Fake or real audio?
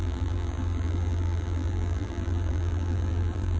fake